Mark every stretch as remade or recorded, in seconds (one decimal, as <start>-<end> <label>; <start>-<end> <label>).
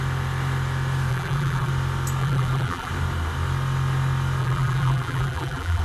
0.0-1.1 recorded; 1.1-1.7 remade; 1.7-2.2 recorded; 2.2-2.9 remade; 2.9-4.4 recorded; 4.4-5.8 remade